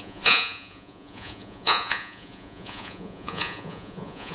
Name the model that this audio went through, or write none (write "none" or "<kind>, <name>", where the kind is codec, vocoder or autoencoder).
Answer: vocoder, Vocos